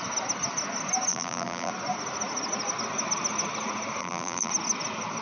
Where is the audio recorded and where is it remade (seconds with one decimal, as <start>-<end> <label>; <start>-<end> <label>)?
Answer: 0.0-1.1 recorded; 1.1-1.7 remade; 1.7-4.0 recorded; 4.0-4.5 remade; 4.5-5.2 recorded